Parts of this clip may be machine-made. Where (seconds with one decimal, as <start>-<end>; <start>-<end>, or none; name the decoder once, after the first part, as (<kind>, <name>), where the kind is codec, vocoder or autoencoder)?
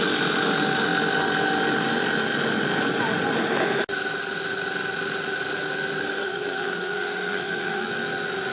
6.0-7.9 (codec, SNAC)